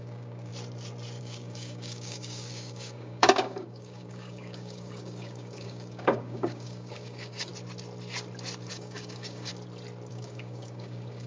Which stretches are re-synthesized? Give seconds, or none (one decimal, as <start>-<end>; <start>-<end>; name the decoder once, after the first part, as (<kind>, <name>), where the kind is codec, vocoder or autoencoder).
0.0-0.5 (codec, DAC); 1.2-7.5; 8.7-9.5; 10.1-11.3